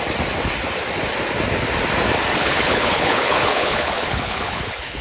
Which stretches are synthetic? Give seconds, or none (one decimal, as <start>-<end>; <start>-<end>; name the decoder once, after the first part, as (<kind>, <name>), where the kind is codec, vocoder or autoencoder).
2.3-5.0 (codec, HILCodec)